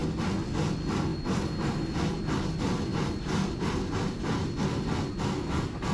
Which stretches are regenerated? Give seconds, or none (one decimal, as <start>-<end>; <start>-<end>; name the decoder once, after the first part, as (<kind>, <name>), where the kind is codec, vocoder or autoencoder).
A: 1.1-2.3 (vocoder, BigVGAN v2)